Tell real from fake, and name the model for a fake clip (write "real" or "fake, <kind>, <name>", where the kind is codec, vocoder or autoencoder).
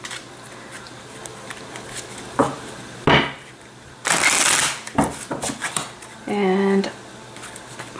real